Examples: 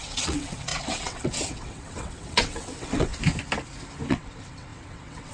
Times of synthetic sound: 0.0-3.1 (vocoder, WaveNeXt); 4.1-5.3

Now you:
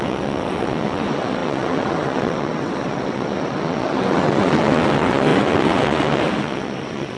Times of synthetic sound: 0.0-7.2 (vocoder, WaveNeXt)

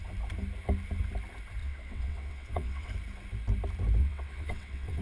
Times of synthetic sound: 1.6-2.9 (vocoder, WaveNeXt); 4.0-5.0